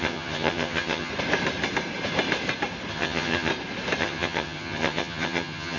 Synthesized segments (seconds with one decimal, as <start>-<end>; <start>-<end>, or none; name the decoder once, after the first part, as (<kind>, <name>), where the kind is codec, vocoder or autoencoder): 0.0-1.1 (vocoder, HiFi-GAN); 2.9-3.5; 4.0-5.8